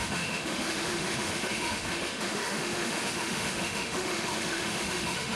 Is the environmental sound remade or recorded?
remade